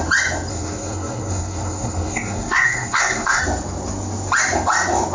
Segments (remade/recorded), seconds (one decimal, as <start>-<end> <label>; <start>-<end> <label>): 0.0-0.5 recorded; 0.5-3.4 remade; 3.4-5.1 recorded